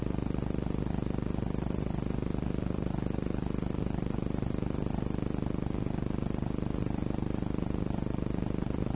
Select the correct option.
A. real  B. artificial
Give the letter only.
A